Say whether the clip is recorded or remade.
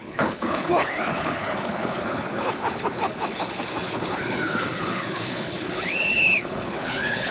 remade